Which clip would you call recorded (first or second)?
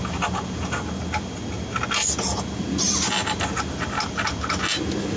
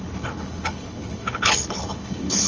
first